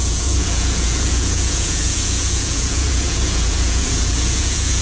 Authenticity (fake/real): fake